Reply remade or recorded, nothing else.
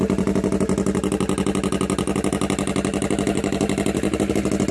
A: recorded